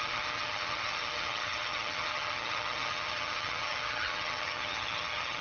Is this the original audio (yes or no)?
no